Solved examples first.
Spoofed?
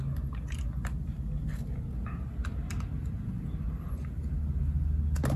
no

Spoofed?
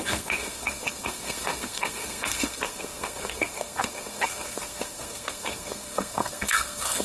yes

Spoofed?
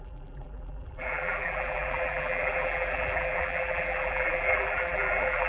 yes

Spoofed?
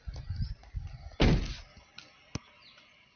no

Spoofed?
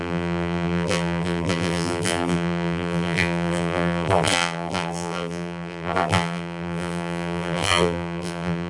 yes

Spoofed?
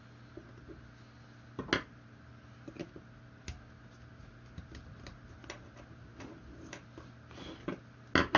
no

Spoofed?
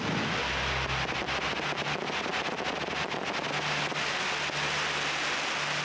no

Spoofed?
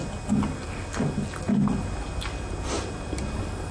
no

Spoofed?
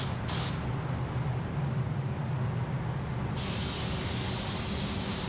no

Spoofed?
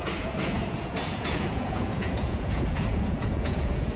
yes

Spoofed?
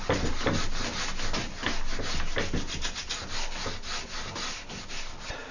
no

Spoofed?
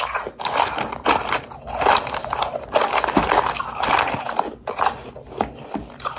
no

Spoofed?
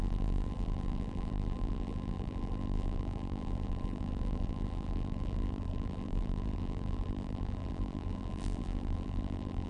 yes